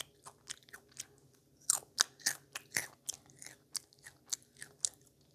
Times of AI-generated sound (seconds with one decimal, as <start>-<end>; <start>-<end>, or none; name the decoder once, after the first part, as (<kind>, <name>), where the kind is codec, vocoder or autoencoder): none